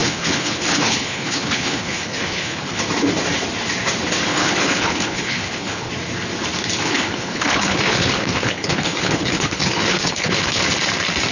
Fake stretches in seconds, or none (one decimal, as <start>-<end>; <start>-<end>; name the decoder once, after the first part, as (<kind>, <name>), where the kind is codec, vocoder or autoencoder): 0.0-2.8 (codec, HILCodec); 4.3-5.9; 6.8-10.6